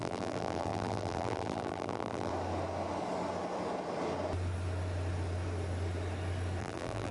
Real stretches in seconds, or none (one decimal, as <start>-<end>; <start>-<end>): 2.3-6.6